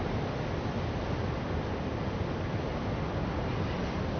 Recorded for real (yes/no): yes